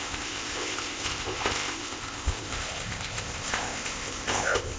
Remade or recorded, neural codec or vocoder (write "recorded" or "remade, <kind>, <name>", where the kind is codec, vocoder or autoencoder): remade, codec, ZipCodec